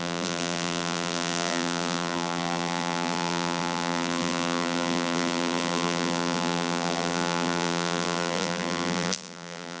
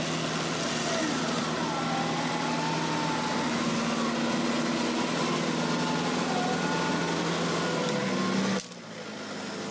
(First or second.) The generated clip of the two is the first